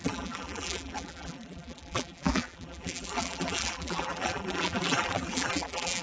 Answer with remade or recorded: remade